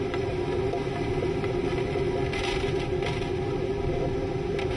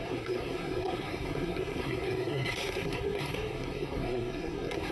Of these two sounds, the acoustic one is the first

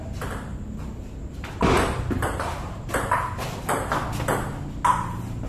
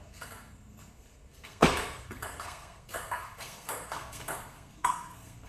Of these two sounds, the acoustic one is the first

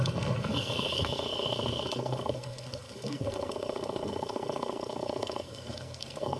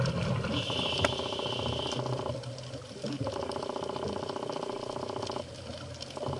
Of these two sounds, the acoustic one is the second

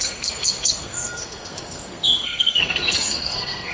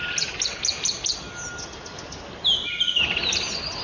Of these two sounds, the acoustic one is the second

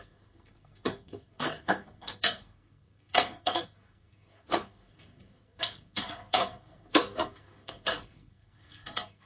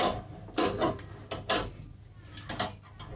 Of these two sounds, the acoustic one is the second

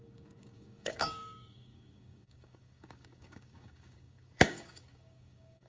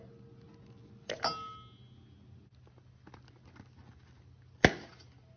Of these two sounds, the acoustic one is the second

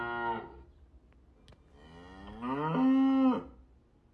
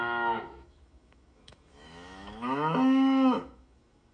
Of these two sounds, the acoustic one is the first